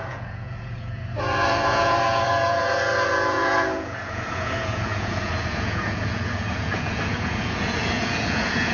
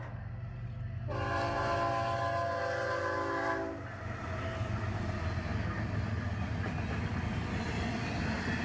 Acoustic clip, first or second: second